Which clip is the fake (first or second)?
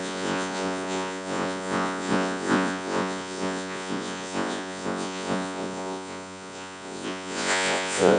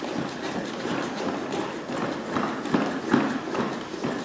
first